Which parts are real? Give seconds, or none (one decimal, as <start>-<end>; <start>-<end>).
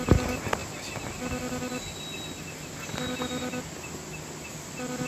0.0-5.1